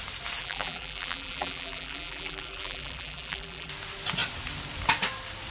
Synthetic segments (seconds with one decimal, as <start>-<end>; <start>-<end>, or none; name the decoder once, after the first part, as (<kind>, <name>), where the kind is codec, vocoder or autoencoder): 0.4-3.7 (vocoder, BigVGAN v2)